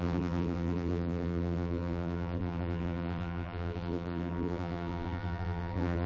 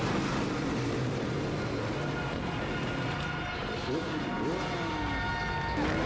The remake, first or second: first